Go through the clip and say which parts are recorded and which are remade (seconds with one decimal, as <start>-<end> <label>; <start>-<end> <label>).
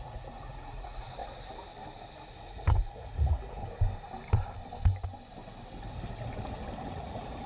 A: 0.0-1.2 remade; 1.2-2.3 recorded; 2.3-3.6 remade; 3.6-6.9 recorded; 6.9-7.5 remade